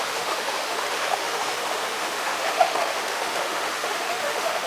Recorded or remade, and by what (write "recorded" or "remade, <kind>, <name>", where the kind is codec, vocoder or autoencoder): remade, autoencoder, DAC-VAE